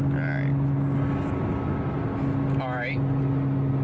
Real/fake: real